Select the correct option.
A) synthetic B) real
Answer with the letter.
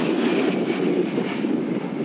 B